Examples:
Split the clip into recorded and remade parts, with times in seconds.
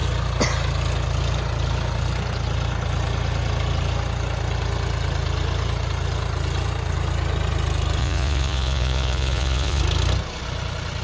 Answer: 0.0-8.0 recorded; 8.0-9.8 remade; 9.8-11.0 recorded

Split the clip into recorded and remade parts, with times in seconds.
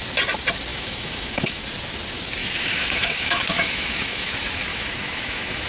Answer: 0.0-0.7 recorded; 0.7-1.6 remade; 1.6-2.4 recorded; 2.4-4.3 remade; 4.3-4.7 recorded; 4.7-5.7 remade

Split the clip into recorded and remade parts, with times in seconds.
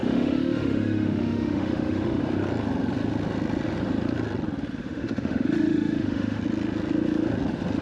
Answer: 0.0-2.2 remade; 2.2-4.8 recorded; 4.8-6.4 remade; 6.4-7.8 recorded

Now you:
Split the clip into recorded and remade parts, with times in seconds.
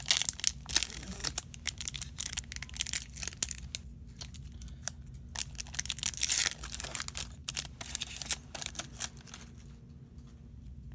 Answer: 0.0-1.2 recorded; 1.2-2.4 remade; 2.4-7.4 recorded; 7.4-8.7 remade; 8.7-10.9 recorded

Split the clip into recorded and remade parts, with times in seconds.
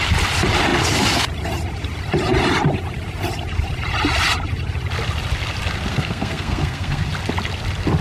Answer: 0.0-5.9 recorded; 5.9-7.1 remade; 7.1-8.0 recorded